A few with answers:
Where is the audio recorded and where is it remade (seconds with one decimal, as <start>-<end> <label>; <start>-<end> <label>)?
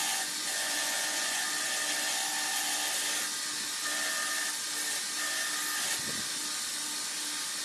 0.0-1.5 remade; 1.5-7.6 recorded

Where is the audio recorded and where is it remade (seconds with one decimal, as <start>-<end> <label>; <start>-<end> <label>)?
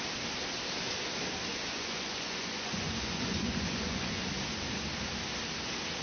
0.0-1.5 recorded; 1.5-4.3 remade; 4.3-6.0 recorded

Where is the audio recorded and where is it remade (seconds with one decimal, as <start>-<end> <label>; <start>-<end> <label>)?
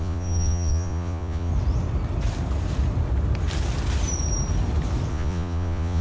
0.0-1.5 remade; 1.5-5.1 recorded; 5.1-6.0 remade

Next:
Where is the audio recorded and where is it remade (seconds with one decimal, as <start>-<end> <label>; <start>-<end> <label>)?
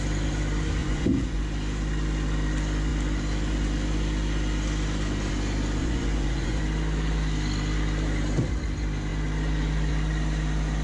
0.0-0.8 recorded; 0.8-1.4 remade; 1.4-5.8 recorded; 5.8-6.6 remade; 6.6-10.8 recorded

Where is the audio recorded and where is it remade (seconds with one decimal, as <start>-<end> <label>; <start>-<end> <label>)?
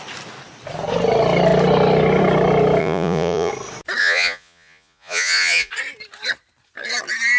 0.0-2.8 recorded; 2.8-3.5 remade; 3.5-4.0 recorded; 4.0-5.7 remade; 5.7-7.4 recorded